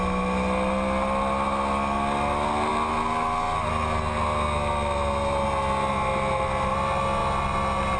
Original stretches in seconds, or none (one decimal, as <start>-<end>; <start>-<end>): 0.0-8.0